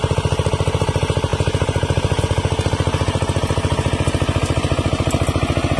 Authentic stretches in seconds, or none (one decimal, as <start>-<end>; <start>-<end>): 0.0-5.8